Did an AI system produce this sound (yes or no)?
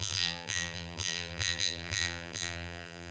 yes